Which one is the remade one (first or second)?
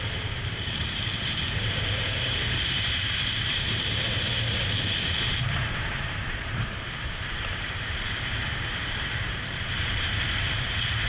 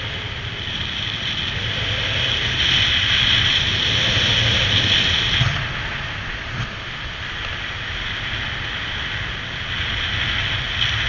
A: first